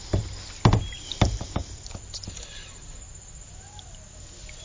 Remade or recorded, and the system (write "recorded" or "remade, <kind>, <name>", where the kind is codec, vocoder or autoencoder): recorded